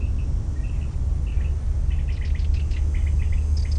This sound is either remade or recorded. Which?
recorded